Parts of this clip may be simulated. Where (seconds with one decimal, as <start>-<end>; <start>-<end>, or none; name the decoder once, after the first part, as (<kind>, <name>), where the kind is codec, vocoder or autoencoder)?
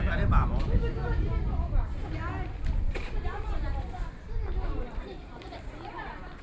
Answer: 0.0-6.4 (vocoder, BigVGAN v2)